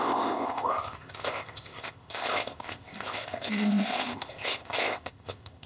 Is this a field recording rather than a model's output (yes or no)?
no